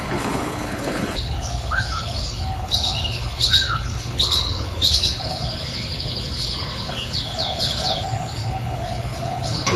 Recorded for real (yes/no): no